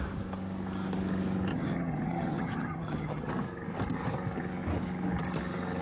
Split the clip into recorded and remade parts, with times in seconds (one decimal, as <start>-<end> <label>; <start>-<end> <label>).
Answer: 0.0-1.5 recorded; 1.5-3.3 remade; 3.3-5.8 recorded